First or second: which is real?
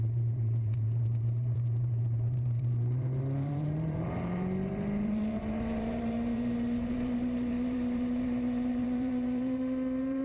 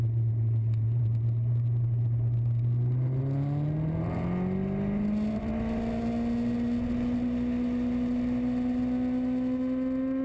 second